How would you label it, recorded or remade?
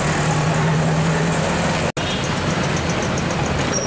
recorded